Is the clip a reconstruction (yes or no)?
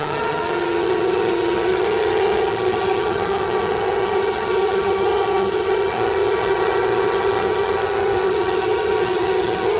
yes